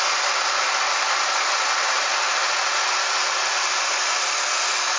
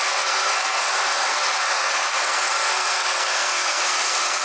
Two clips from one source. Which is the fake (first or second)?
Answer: second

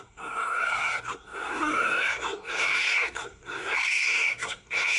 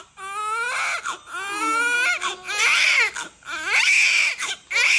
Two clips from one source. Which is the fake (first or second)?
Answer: first